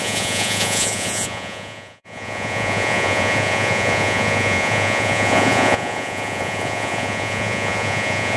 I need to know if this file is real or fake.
fake